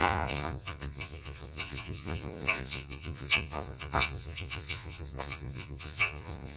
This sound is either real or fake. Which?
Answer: fake